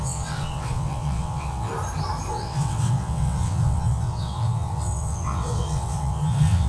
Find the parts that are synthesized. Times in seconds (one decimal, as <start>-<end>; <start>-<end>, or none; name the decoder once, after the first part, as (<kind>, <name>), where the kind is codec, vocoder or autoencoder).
0.0-1.7 (vocoder, WaveNeXt); 2.3-6.7